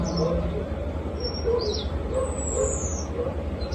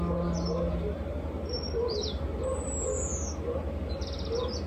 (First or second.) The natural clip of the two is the second